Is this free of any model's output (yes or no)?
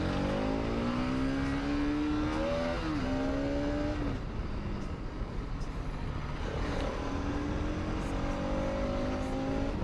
yes